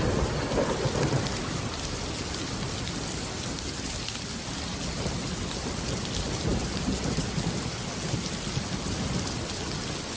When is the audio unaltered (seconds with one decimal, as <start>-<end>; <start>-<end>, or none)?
0.0-10.2